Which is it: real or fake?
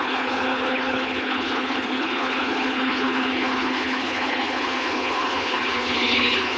fake